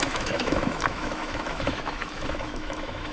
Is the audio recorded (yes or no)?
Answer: no